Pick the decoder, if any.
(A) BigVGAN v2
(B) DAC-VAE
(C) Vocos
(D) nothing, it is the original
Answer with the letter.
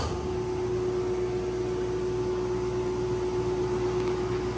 D